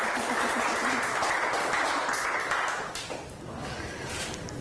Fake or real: real